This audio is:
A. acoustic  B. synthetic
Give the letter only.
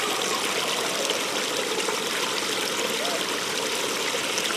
A